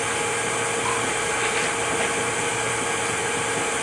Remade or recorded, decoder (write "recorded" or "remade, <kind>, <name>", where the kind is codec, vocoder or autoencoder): recorded